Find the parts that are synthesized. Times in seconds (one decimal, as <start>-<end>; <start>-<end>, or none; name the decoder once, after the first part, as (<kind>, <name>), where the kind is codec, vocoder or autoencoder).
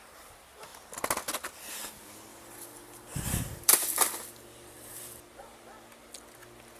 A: 2.3-4.2 (vocoder, BigVGAN v2)